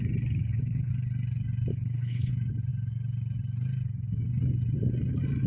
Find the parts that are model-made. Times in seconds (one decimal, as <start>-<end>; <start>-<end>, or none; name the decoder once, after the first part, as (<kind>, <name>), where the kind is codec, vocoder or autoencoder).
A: 0.4-0.9 (codec, HILCodec); 1.7-2.3